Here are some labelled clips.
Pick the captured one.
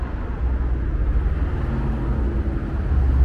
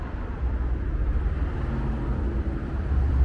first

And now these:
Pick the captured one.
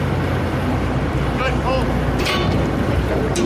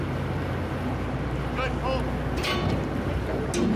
second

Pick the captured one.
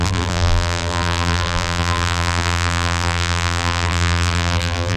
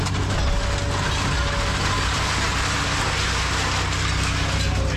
second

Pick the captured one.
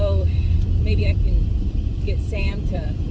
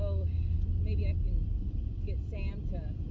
second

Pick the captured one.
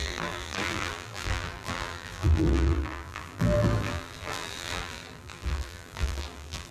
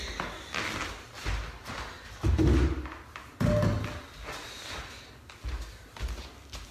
second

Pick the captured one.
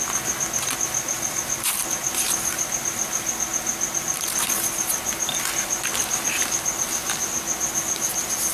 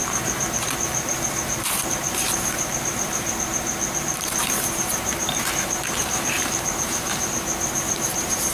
first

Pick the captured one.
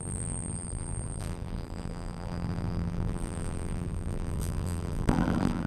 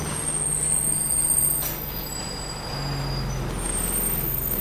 second